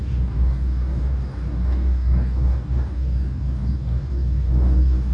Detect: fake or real fake